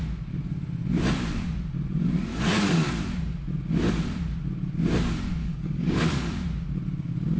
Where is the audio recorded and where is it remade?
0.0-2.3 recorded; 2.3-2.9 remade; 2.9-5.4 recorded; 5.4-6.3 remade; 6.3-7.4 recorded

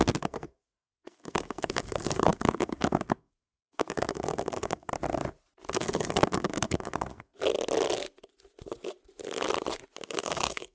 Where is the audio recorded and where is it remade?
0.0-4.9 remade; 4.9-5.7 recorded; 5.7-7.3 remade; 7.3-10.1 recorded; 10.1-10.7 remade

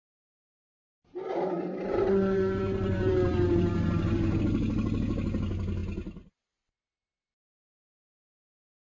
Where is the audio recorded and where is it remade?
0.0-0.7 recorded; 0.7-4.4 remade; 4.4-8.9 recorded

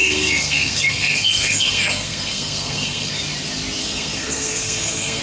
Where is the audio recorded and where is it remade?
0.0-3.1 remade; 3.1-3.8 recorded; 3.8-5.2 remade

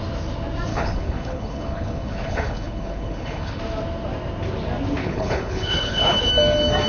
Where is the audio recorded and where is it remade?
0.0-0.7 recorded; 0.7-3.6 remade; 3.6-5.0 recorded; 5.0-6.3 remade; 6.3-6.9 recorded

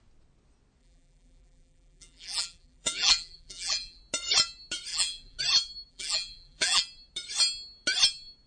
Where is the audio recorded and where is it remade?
0.0-0.8 recorded; 0.8-4.0 remade; 4.0-4.9 recorded; 4.9-5.4 remade; 5.4-5.9 recorded; 5.9-6.8 remade; 6.8-8.5 recorded

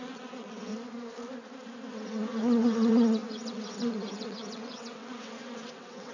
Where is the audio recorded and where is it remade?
0.0-0.7 remade; 0.7-1.9 recorded; 1.9-6.1 remade